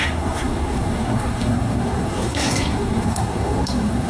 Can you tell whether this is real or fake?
fake